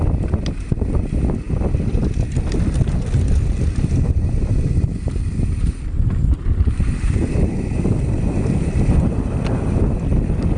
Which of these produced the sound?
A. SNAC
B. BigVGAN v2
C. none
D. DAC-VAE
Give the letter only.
C